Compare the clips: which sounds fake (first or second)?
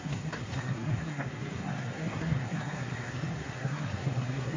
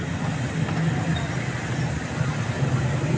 first